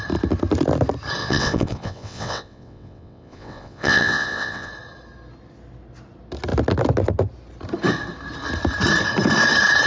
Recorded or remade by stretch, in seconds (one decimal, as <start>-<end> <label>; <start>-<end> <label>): 0.0-1.2 recorded; 1.2-4.7 remade; 4.7-9.9 recorded